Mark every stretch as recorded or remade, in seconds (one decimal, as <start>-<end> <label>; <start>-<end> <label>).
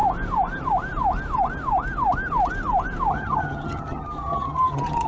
0.0-3.1 recorded; 3.1-5.1 remade